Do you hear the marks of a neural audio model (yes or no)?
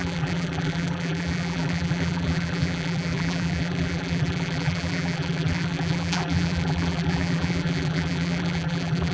yes